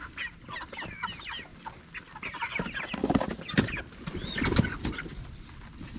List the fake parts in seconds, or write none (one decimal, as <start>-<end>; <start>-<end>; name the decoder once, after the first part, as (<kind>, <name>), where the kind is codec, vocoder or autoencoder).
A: none